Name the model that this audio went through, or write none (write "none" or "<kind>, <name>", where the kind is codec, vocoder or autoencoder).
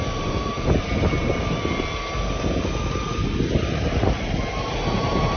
none